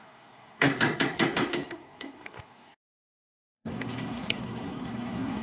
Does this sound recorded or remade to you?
remade